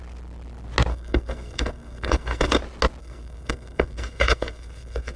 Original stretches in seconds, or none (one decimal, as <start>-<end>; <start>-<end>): 0.0-0.9; 2.6-3.0